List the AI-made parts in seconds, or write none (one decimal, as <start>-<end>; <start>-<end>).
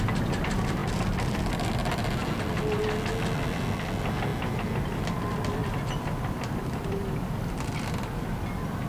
none